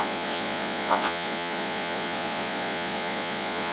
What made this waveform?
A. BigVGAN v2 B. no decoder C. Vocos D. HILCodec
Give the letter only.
C